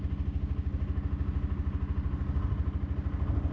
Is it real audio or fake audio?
real